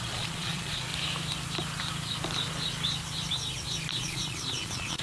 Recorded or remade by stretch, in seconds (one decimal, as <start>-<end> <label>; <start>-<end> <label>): 0.0-0.9 remade; 0.9-3.9 recorded; 3.9-5.0 remade